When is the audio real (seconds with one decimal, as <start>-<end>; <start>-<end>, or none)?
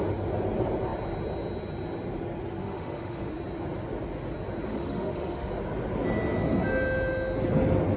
0.0-2.6; 3.3-4.7; 5.5-8.0